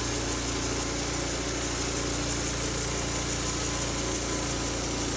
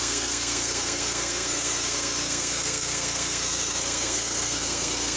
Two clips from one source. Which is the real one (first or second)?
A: first